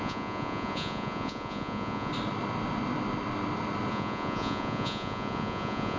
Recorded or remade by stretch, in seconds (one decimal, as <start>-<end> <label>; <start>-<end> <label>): 0.0-2.1 remade; 2.1-3.9 recorded; 3.9-6.0 remade